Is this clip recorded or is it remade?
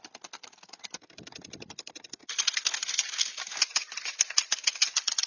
recorded